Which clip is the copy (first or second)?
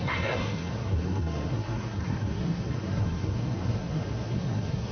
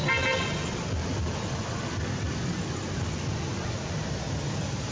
first